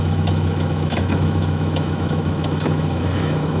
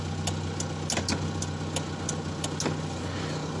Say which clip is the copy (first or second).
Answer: first